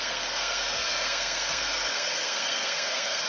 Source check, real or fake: fake